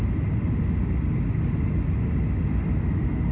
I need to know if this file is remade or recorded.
recorded